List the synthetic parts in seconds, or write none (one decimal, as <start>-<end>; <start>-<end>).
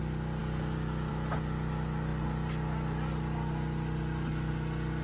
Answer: none